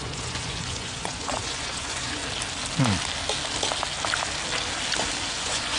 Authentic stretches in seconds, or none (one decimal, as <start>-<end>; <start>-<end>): 2.2-5.3